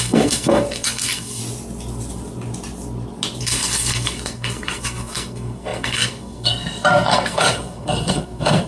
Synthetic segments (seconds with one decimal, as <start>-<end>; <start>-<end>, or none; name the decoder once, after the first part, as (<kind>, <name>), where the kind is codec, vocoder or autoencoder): 0.0-1.4 (codec, SNAC); 3.4-8.7